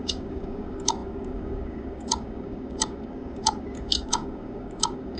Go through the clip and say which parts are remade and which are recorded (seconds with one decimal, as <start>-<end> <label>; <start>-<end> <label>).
0.0-5.2 remade